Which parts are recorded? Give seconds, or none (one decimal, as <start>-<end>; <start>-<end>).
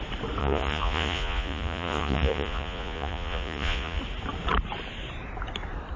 0.0-0.4; 4.0-6.0